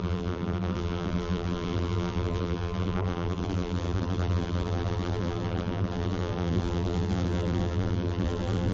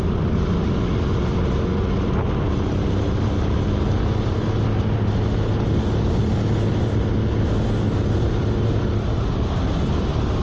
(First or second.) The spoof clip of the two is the first